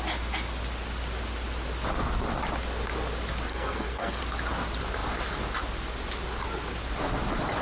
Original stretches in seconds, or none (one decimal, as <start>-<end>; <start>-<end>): 0.0-3.5; 4.2-7.6